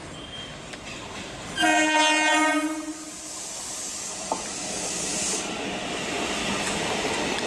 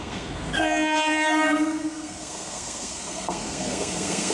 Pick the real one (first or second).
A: first